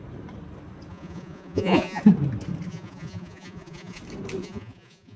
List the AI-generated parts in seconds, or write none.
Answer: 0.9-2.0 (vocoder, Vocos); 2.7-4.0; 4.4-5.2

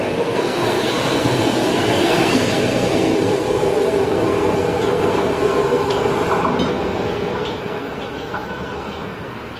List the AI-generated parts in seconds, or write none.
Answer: 0.0-6.1 (codec, SNAC); 6.7-9.6

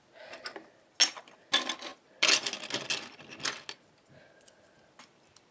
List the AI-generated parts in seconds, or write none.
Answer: none